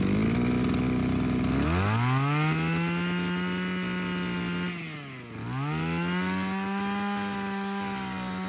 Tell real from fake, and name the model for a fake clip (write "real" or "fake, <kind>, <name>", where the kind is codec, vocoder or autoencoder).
real